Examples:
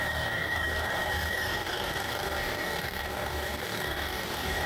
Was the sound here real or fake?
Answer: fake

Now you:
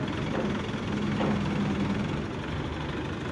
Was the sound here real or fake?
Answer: real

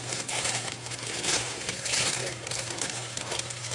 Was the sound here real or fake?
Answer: fake